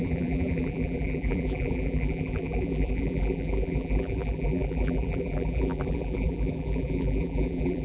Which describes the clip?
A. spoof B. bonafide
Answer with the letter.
A